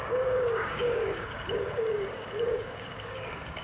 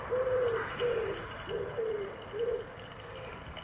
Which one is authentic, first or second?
second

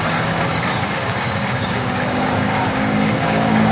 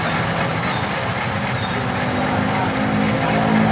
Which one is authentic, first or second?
second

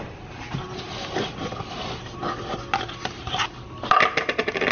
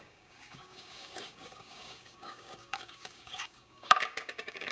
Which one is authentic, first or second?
first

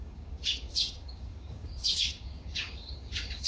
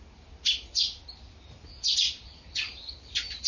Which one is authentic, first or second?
second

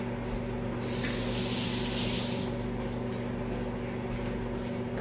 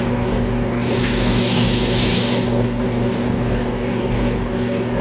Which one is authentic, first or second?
first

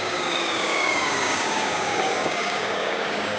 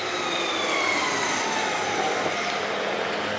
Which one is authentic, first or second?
second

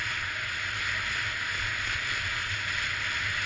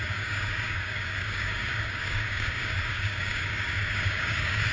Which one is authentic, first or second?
first